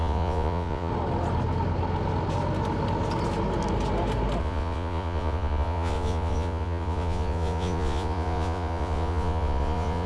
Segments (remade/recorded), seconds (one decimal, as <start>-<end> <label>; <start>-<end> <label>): 0.0-0.9 remade; 0.9-4.4 recorded; 4.4-10.1 remade